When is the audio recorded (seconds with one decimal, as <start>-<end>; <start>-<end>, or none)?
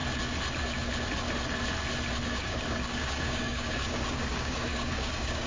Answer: 0.0-2.3